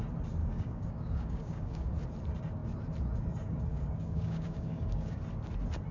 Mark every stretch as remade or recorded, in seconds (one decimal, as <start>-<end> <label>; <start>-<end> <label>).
0.0-0.4 recorded; 0.4-1.9 remade; 1.9-3.7 recorded; 3.7-5.2 remade; 5.2-5.9 recorded